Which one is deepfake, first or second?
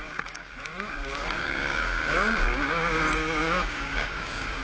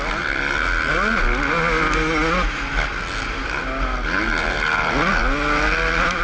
first